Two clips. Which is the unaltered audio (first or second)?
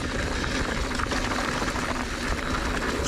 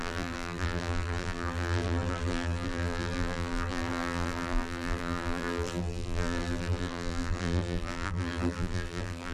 first